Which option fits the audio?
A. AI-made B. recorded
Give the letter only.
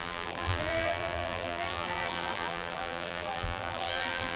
A